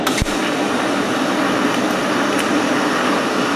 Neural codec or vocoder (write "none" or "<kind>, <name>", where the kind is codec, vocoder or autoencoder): vocoder, BigVGAN v2